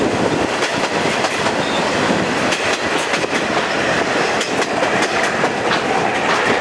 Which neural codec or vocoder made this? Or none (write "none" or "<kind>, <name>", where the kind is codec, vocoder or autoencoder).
none